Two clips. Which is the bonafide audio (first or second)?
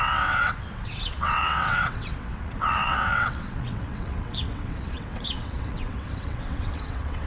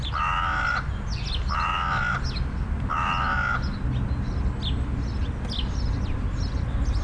second